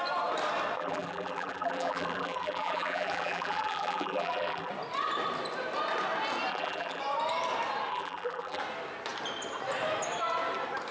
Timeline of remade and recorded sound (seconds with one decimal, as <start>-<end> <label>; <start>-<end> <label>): 0.0-0.8 recorded; 0.8-4.7 remade; 4.7-6.5 recorded; 6.5-7.0 remade; 7.0-7.9 recorded; 7.9-8.6 remade; 8.6-10.9 recorded